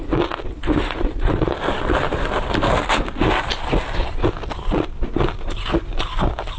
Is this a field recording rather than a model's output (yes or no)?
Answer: yes